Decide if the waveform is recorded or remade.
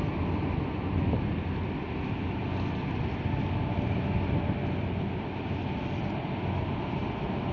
recorded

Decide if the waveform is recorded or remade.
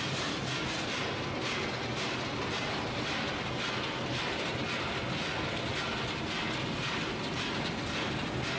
recorded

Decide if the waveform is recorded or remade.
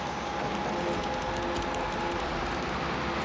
recorded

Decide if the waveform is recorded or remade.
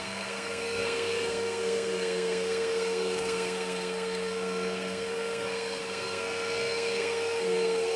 remade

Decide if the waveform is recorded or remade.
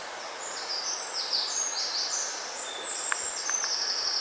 recorded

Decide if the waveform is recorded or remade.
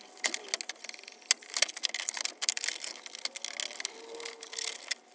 recorded